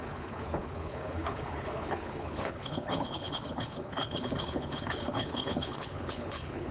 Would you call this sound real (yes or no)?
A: no